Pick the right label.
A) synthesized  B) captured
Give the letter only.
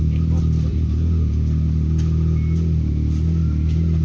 B